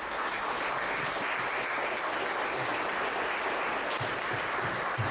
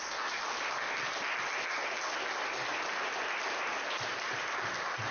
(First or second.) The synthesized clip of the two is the first